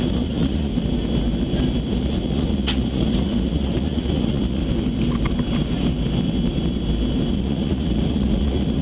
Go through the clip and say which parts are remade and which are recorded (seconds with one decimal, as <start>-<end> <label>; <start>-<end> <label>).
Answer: 0.0-0.7 remade; 0.7-2.0 recorded; 2.0-4.6 remade; 4.6-7.3 recorded; 7.3-8.8 remade